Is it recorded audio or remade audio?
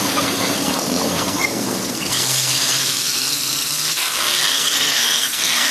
remade